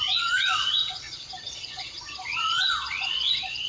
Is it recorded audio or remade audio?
remade